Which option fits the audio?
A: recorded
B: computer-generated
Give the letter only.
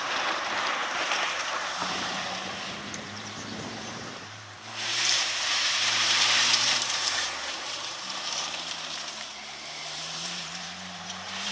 B